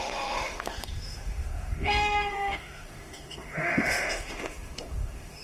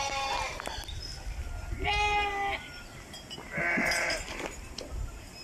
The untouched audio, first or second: second